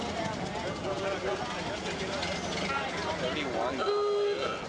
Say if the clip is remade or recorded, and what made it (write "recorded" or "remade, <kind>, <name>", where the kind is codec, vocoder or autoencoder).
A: recorded